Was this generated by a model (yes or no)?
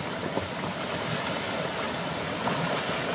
no